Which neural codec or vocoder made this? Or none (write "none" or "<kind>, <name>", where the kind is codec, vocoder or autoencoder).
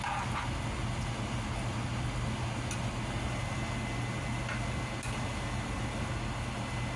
none